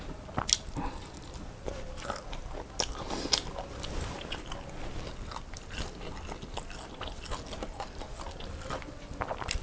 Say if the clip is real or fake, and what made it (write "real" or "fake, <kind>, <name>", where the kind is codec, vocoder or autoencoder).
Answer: real